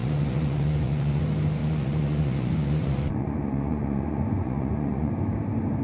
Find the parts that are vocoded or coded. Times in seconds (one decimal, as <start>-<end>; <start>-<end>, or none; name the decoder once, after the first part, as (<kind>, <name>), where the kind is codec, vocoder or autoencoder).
0.0-1.2 (vocoder, Vocos); 1.6-5.1